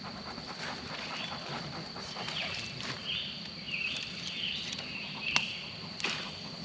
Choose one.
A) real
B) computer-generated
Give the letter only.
A